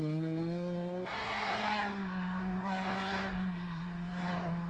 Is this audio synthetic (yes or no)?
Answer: yes